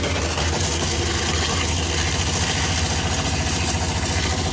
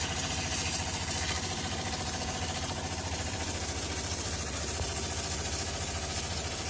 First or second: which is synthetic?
second